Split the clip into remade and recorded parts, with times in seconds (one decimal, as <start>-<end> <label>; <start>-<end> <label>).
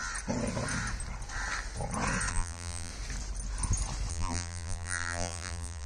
0.0-2.3 recorded; 2.3-2.9 remade; 2.9-4.1 recorded; 4.1-5.9 remade